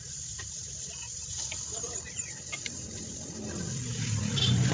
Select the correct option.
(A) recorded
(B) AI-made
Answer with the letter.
B